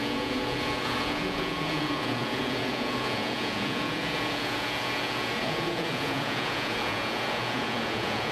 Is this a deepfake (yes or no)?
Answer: yes